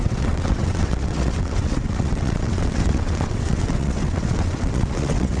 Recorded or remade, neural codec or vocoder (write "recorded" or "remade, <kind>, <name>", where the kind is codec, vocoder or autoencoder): remade, vocoder, WaveNeXt